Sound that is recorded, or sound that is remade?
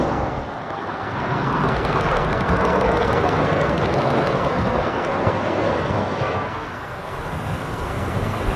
remade